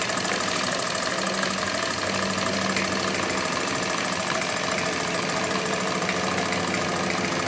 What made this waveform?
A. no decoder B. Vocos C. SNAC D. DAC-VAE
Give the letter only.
A